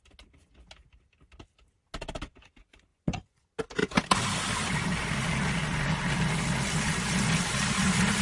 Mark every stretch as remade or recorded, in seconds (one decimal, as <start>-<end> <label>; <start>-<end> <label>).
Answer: 0.0-2.9 recorded; 2.9-3.4 remade; 3.4-8.2 recorded